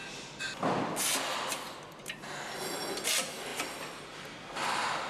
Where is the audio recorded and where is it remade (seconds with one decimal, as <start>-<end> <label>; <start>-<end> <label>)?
0.0-5.1 recorded